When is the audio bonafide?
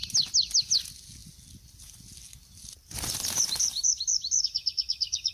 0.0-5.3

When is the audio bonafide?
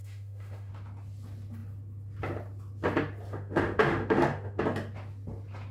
0.7-3.3; 4.6-5.7